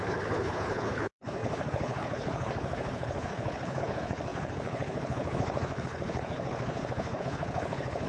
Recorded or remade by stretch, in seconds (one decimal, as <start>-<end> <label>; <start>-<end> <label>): 0.0-8.1 remade

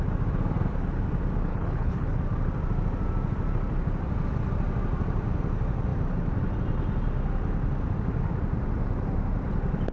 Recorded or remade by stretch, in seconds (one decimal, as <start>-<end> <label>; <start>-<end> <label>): 0.0-1.5 recorded; 1.5-2.2 remade; 2.2-9.9 recorded

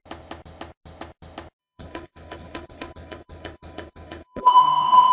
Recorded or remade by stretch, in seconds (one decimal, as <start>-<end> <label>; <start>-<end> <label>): 0.0-1.6 recorded; 1.6-5.1 remade

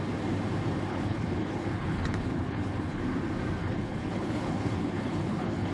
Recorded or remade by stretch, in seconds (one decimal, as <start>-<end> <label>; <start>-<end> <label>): 0.0-0.9 recorded; 0.9-3.0 remade; 3.0-3.6 recorded; 3.6-5.7 remade

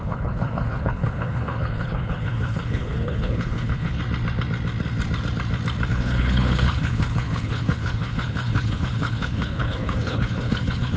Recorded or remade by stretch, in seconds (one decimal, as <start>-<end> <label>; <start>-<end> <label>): 0.0-4.0 remade; 4.0-5.9 recorded; 5.9-11.0 remade

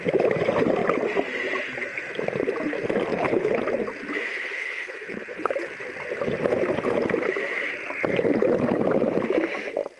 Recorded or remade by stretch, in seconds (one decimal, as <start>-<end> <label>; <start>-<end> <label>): 0.0-3.1 recorded; 3.1-3.6 remade; 3.6-4.3 recorded; 4.3-5.7 remade; 5.7-10.0 recorded